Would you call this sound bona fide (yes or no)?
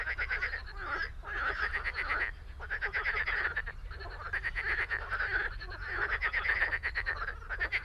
yes